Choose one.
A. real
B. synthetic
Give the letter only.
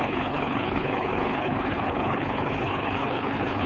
B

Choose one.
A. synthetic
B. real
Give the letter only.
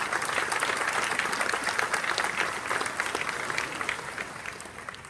B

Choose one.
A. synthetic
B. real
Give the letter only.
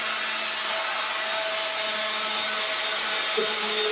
B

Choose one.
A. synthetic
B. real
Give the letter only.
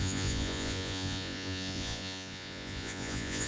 A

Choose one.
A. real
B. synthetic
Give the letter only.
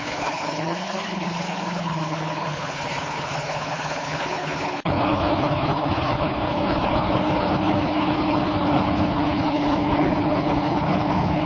B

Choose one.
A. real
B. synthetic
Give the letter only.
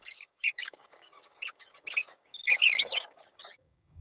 B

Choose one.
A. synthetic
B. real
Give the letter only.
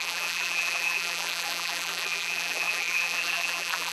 A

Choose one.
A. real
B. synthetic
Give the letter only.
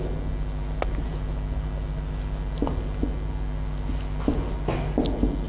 A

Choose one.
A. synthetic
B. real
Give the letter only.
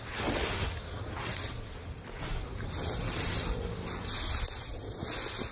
B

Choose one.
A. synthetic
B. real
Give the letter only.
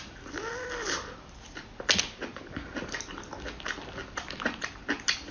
B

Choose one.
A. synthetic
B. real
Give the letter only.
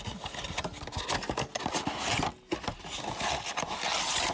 B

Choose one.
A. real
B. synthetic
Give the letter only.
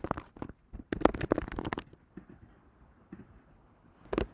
A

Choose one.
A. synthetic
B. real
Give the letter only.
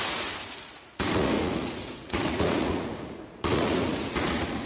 A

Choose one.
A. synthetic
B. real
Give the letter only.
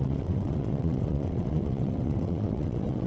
A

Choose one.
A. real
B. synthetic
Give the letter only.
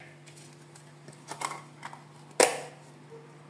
A